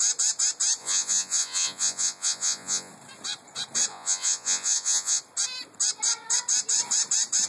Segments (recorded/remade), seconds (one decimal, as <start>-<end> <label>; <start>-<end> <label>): 0.0-0.8 recorded; 0.8-2.9 remade; 2.9-3.9 recorded; 3.9-5.2 remade; 5.2-7.5 recorded